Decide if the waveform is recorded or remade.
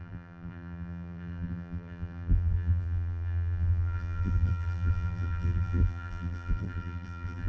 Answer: remade